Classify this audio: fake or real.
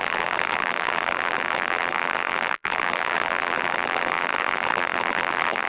fake